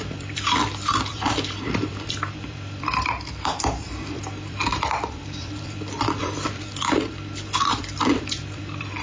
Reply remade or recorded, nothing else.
remade